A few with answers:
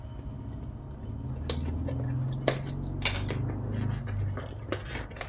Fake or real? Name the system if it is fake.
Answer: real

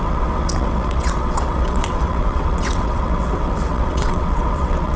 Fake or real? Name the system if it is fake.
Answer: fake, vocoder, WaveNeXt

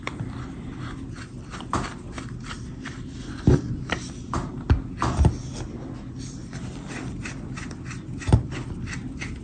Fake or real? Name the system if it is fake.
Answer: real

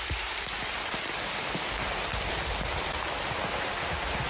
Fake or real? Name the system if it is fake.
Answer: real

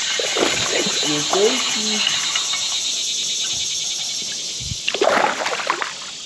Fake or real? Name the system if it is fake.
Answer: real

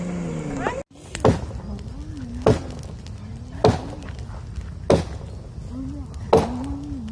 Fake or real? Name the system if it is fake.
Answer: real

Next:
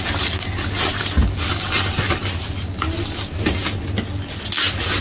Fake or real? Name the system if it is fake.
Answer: real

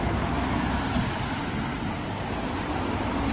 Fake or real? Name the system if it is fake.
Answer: real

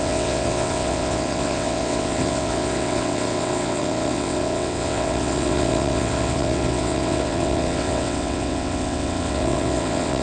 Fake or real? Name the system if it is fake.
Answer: fake, vocoder, WaveNeXt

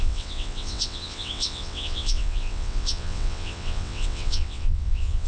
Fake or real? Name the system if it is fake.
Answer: fake, vocoder, WaveNeXt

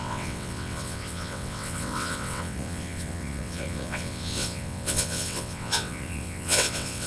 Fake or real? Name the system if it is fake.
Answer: fake, vocoder, WaveNeXt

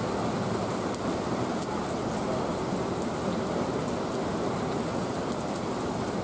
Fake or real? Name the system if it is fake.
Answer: real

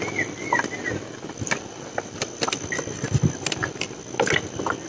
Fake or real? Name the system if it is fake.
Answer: real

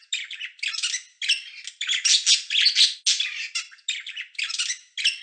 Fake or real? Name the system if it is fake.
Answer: real